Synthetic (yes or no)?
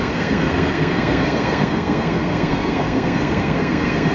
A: yes